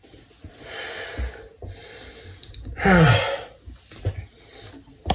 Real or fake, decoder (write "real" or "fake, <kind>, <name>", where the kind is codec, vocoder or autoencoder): real